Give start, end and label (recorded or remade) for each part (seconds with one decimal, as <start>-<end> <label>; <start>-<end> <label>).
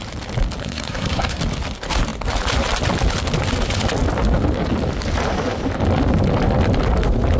0.0-0.6 recorded; 0.6-1.4 remade; 1.4-7.4 recorded